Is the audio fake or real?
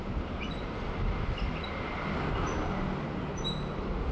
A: real